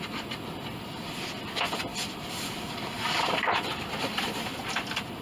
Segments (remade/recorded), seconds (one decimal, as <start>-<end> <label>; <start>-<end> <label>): 0.0-5.2 remade